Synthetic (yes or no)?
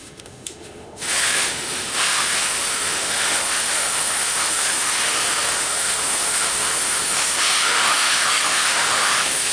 yes